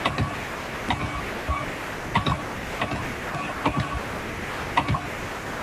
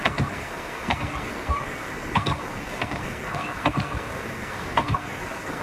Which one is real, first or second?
first